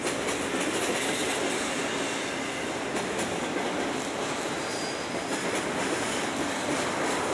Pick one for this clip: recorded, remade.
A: recorded